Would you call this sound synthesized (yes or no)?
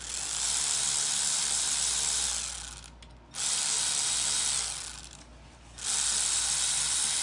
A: no